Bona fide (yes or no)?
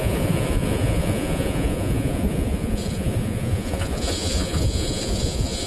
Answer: no